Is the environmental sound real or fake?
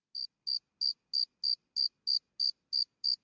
real